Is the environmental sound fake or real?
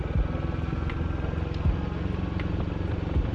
real